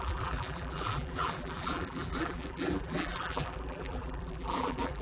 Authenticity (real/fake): fake